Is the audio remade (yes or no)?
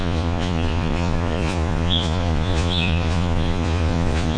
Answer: yes